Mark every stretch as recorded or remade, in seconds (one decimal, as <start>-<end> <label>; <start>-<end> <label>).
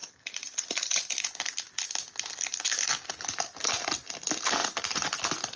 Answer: 0.0-5.6 recorded